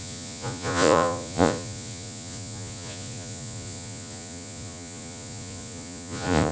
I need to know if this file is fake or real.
fake